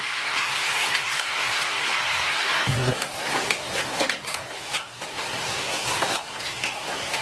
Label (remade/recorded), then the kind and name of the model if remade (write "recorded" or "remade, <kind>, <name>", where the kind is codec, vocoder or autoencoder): remade, codec, SNAC